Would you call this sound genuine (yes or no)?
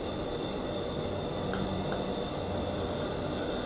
yes